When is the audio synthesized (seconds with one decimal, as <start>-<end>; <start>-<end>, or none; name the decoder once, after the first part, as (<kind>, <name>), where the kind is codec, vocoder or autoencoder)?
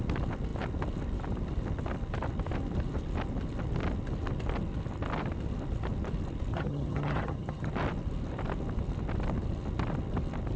6.5-7.7 (vocoder, HiFi-GAN)